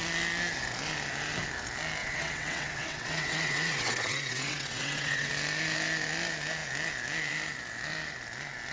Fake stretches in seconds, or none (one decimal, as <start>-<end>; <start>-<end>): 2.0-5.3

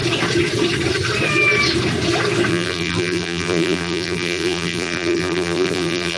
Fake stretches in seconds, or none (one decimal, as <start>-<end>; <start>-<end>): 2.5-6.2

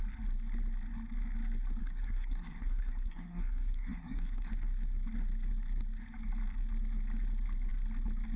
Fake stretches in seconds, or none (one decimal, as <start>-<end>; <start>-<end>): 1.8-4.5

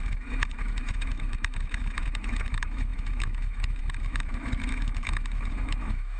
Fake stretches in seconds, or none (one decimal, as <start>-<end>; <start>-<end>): 0.0-6.2

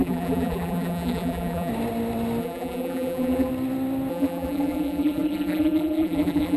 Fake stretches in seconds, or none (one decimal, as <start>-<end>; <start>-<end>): 0.0-1.7; 2.4-3.5; 4.1-6.6

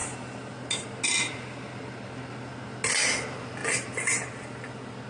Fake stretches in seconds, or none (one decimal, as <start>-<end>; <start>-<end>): none